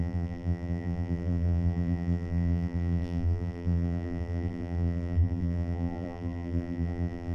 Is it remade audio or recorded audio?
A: remade